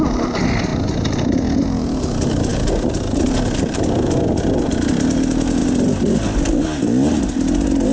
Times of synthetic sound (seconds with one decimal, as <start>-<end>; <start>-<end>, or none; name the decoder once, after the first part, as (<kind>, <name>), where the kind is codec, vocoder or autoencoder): none